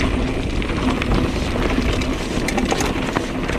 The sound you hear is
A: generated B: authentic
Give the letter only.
B